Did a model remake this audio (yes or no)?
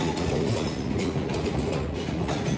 yes